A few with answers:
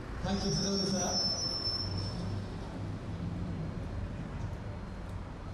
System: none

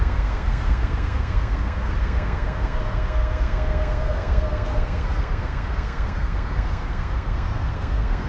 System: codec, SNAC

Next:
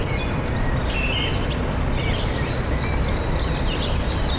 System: none